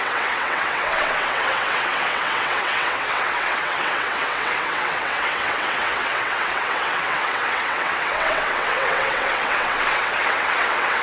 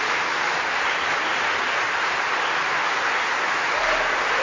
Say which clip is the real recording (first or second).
second